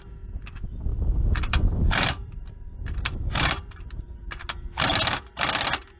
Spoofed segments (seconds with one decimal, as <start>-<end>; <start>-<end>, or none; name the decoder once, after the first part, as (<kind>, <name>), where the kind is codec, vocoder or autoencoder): 0.9-4.0 (vocoder, BigVGAN v2)